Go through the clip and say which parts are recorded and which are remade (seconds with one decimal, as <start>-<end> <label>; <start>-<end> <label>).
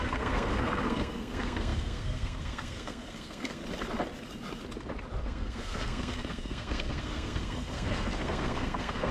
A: 0.0-3.6 remade; 3.6-5.2 recorded; 5.2-9.1 remade